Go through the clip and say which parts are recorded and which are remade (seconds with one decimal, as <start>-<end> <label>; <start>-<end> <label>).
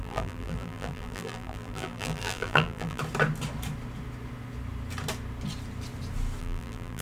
0.0-3.0 remade; 3.0-6.4 recorded; 6.4-7.0 remade